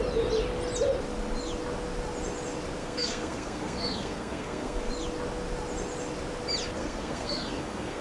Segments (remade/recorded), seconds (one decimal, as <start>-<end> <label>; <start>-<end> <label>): 0.0-2.8 recorded; 2.8-4.9 remade; 4.9-6.8 recorded; 6.8-8.0 remade